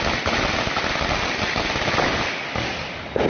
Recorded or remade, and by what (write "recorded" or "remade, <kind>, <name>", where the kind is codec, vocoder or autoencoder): recorded